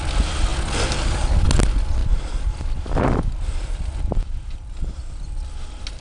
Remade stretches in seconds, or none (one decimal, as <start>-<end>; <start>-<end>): none